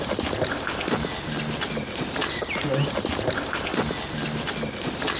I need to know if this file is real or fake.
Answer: real